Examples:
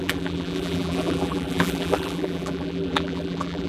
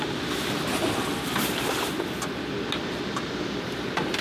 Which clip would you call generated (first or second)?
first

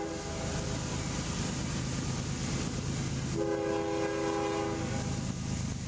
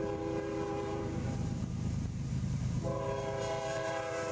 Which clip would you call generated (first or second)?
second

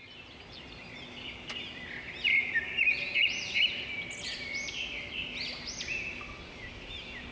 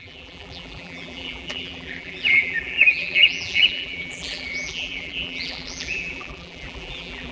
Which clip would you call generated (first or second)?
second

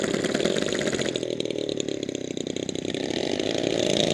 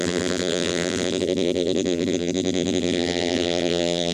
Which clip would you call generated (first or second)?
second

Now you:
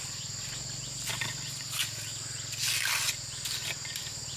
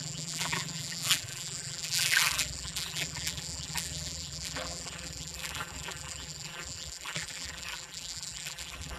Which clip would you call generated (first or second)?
second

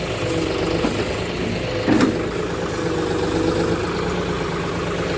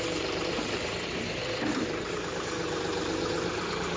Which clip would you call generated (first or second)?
second